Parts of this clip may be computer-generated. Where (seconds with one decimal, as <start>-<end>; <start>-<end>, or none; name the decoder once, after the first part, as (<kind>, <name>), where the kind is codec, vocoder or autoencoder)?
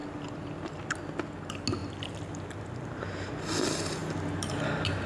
0.0-0.8 (vocoder, BigVGAN v2); 1.8-2.6; 4.0-4.5